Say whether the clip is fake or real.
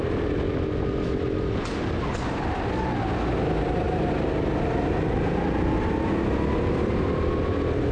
real